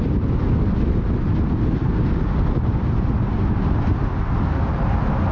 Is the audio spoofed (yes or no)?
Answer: no